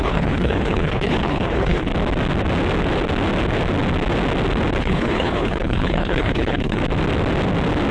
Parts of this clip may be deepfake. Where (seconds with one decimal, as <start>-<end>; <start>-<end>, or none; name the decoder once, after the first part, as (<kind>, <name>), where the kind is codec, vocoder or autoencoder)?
0.0-1.9 (codec, HILCodec); 4.8-6.8